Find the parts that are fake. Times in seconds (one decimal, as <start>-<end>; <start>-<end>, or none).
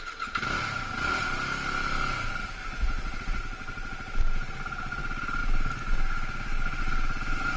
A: 2.6-3.4